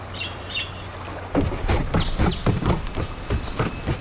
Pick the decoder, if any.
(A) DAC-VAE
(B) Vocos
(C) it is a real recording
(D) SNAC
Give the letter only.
C